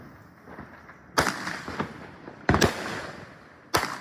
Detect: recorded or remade recorded